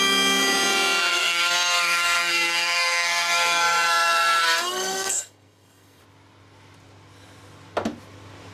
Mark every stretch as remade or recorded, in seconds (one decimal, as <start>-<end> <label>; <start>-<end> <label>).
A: 0.0-1.1 recorded; 1.1-6.0 remade; 6.0-8.5 recorded

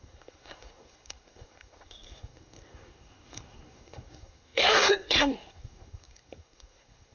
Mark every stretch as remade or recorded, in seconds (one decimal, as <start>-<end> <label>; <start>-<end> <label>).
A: 0.0-7.1 remade

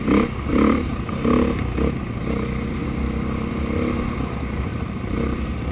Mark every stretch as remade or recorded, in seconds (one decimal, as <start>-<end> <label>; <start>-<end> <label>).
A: 0.0-0.5 recorded; 0.5-1.6 remade; 1.6-2.8 recorded; 2.8-3.5 remade; 3.5-4.7 recorded; 4.7-5.7 remade